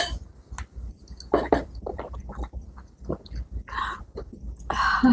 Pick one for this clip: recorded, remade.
recorded